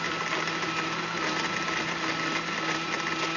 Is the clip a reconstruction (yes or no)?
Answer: no